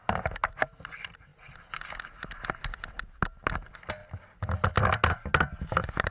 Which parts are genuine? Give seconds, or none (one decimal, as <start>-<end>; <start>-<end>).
0.0-6.1